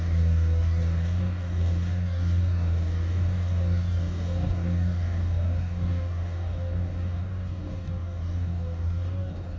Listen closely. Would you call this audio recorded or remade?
remade